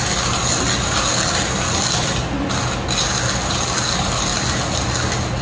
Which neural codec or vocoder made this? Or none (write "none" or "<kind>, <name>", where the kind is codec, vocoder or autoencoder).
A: none